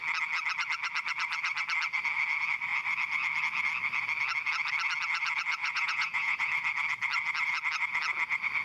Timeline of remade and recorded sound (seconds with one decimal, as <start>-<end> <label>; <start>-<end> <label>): 0.0-5.6 recorded; 5.6-6.5 remade; 6.5-8.6 recorded